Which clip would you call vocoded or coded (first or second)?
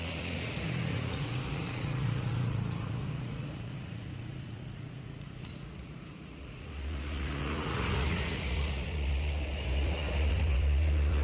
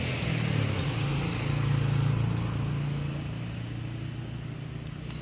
first